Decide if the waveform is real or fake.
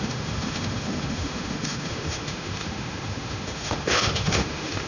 fake